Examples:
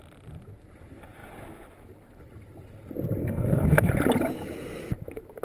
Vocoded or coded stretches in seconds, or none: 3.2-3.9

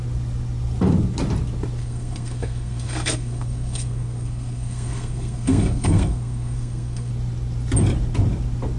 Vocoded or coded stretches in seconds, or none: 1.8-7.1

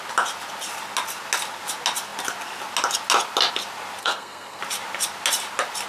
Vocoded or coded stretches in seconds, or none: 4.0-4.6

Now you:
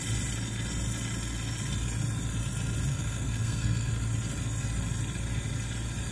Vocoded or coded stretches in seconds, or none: 2.9-3.9

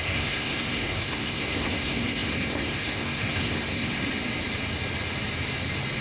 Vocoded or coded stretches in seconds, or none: 0.0-4.0